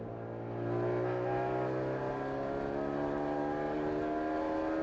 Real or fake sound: real